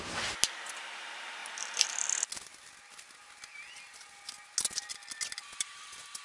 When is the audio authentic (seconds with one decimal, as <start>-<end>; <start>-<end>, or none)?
0.0-6.2